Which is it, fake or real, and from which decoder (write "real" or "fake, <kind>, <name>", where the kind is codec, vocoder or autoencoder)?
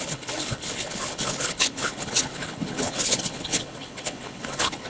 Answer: fake, codec, HILCodec